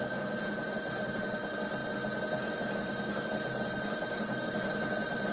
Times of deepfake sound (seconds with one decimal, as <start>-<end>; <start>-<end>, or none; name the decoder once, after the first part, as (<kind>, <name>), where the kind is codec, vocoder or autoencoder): none

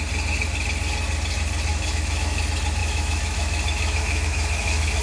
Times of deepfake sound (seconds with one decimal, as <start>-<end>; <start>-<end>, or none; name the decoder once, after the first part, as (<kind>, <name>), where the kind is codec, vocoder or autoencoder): 1.7-2.4 (autoencoder, DAC-VAE); 2.8-5.0